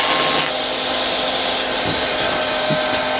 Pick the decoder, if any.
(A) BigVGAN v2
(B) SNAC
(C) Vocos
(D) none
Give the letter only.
A